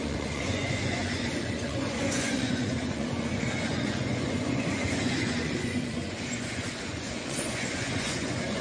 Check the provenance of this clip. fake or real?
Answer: fake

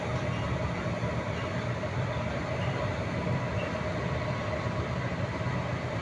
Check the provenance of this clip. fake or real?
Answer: real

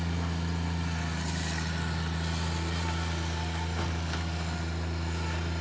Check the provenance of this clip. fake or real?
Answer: real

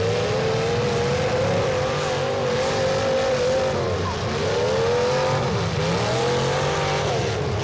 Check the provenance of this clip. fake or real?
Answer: real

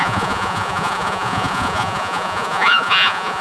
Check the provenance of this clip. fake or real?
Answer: fake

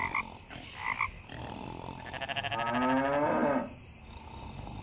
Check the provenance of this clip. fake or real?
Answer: real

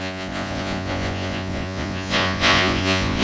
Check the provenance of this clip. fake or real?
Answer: fake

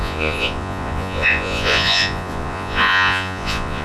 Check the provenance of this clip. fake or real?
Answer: fake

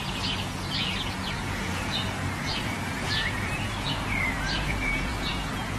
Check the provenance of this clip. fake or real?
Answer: fake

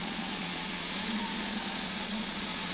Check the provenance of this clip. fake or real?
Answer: fake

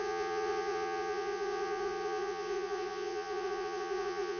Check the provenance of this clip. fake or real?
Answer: fake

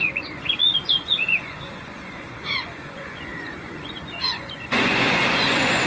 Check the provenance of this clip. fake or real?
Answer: fake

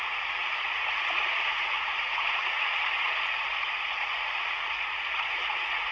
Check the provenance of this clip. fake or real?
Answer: fake